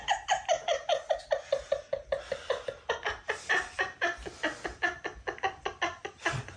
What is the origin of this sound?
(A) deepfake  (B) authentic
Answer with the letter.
B